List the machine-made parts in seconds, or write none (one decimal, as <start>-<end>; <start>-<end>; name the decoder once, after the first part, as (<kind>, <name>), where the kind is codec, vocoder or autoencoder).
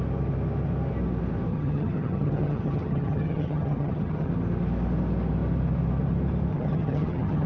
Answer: 1.5-4.3 (vocoder, HiFi-GAN); 6.5-7.5